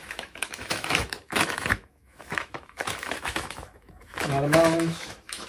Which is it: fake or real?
fake